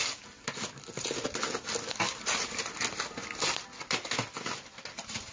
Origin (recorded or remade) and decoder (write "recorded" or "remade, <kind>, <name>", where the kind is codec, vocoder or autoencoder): recorded